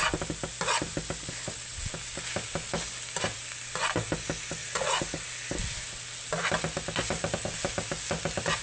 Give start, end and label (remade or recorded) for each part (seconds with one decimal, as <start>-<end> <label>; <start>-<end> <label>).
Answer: 0.0-4.6 recorded; 4.6-5.1 remade; 5.1-8.6 recorded